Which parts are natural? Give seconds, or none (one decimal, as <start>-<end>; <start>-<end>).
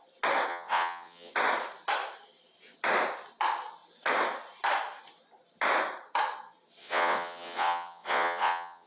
0.0-0.5; 1.3-6.8